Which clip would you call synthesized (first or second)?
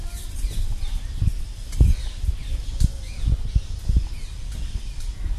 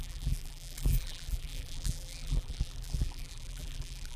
second